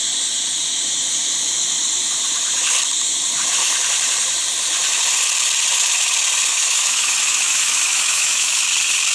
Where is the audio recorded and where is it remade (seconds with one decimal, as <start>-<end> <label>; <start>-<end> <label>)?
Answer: 0.0-6.5 recorded; 6.5-8.6 remade; 8.6-9.1 recorded